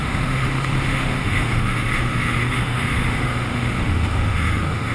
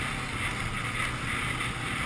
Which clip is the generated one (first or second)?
first